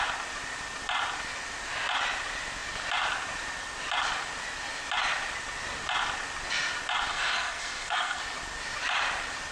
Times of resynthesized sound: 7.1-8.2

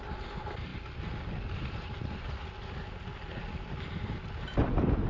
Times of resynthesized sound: none

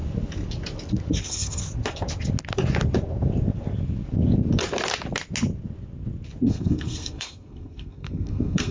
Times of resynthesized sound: 1.2-1.6; 6.5-8.7

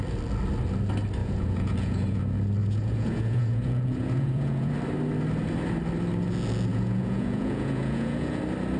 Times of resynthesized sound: 1.2-2.2; 2.6-4.7; 6.7-8.4

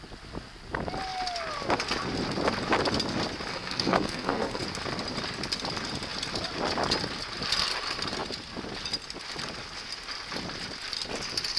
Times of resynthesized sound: 3.5-4.6

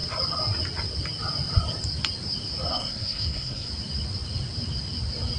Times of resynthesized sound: 2.7-3.7

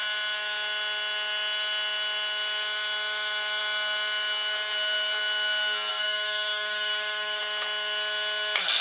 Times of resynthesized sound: 5.9-7.4

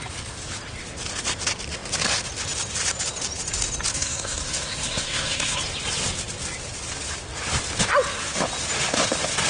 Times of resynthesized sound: 3.9-5.6